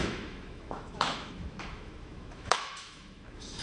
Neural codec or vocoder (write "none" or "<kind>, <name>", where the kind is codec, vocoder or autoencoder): autoencoder, DAC-VAE